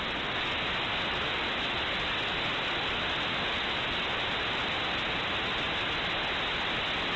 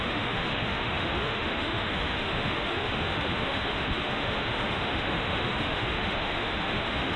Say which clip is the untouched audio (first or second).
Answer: first